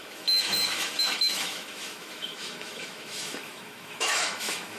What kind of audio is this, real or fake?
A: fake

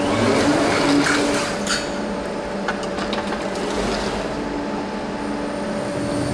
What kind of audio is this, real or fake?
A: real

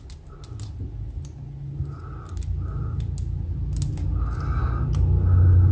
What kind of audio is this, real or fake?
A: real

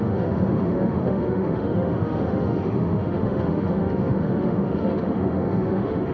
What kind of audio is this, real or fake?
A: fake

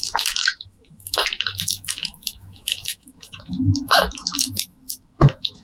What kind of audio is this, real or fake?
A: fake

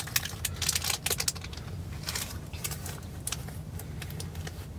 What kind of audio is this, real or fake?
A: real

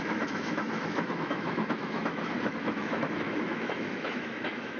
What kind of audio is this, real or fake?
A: fake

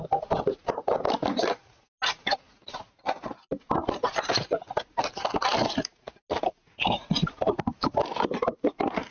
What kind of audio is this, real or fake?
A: real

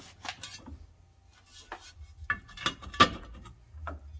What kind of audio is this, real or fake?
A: real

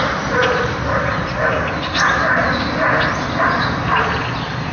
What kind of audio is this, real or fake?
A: real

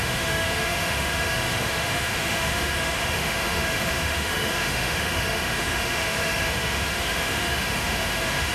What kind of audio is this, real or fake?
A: fake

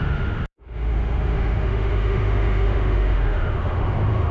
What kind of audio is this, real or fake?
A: fake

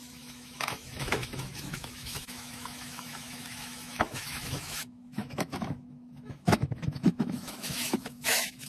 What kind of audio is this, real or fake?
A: fake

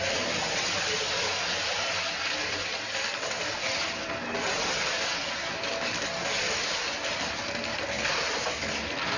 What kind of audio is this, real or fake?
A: real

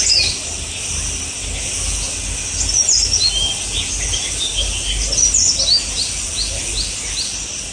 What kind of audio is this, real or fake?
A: real